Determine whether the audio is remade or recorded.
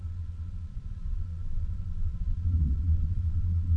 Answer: remade